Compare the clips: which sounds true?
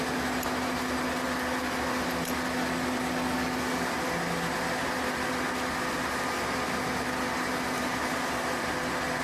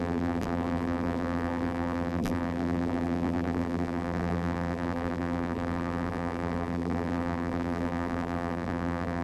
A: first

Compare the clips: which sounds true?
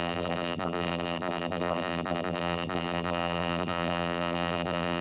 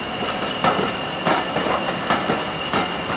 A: second